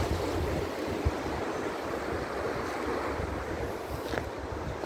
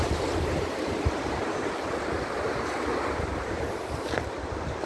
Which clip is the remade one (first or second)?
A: second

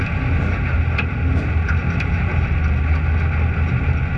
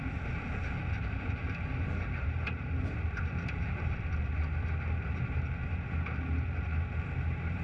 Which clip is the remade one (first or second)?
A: second